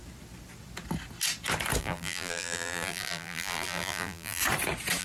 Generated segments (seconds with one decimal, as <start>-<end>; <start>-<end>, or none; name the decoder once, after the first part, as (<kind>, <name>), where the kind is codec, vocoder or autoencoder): 1.8-4.4 (vocoder, BigVGAN v2)

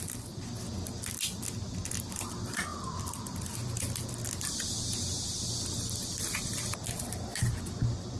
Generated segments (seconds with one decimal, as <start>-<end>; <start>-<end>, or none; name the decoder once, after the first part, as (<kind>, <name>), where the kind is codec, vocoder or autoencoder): 2.7-4.1 (vocoder, BigVGAN v2); 7.3-8.2

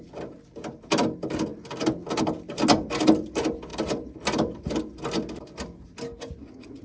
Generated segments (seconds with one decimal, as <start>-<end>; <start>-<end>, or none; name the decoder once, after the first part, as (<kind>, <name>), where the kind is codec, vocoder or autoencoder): 3.7-4.7 (vocoder, BigVGAN v2)

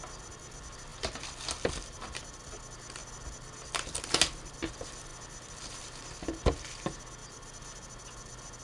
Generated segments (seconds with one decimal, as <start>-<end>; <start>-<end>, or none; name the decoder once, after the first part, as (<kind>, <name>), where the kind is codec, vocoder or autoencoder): 0.9-2.6 (vocoder, BigVGAN v2); 7.2-7.9

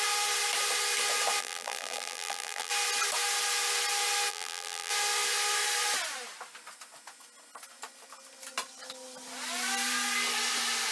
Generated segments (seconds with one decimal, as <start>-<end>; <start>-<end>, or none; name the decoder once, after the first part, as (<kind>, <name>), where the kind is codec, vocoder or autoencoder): 1.4-2.7 (vocoder, BigVGAN v2); 4.3-4.9

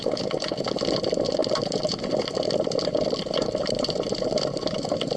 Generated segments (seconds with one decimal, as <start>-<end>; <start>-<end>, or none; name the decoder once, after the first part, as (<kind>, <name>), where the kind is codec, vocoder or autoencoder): 1.4-4.4 (vocoder, BigVGAN v2)

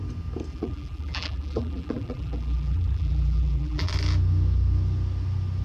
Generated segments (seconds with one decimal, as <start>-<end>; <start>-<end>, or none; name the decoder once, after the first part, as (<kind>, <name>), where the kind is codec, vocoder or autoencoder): 0.5-3.9 (vocoder, BigVGAN v2)

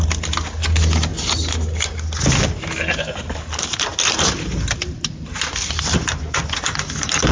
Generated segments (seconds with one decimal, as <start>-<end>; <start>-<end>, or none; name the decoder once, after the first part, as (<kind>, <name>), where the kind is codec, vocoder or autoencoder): 3.9-6.4 (vocoder, BigVGAN v2)